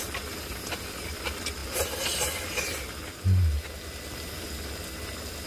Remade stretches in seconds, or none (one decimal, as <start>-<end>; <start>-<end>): none